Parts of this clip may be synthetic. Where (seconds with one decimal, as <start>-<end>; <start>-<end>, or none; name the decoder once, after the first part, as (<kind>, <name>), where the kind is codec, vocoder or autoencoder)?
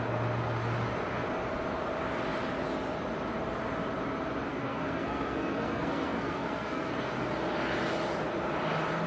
4.5-6.9 (codec, SNAC)